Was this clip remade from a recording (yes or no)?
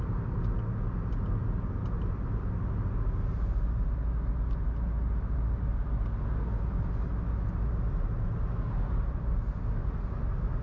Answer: no